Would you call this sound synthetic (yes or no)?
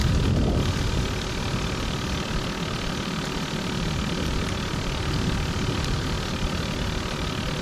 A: no